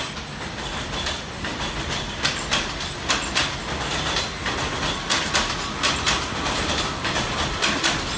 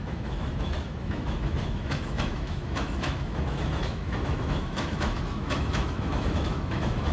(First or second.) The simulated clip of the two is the second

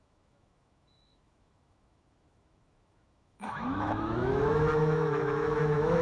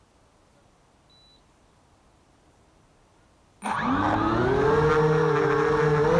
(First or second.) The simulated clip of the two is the first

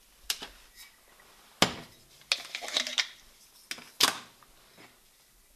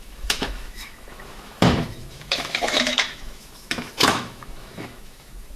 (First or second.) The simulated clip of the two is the second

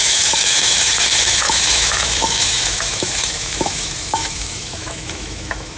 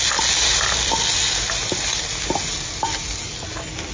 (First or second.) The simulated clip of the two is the first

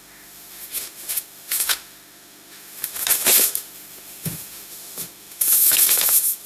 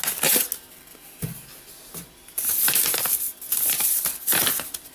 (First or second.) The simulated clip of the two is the first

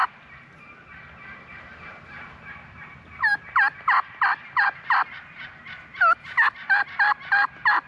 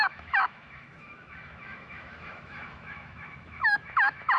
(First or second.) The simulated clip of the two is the second